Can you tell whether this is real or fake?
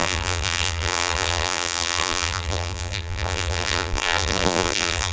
fake